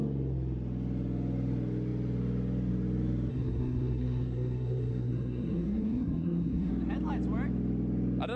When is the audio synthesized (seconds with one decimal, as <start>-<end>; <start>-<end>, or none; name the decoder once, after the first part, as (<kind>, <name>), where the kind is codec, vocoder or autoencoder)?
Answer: 3.3-6.7 (codec, SNAC)